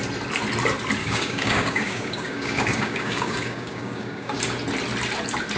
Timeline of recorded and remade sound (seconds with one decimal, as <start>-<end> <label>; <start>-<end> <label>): 0.0-1.0 recorded; 1.0-4.4 remade; 4.4-5.6 recorded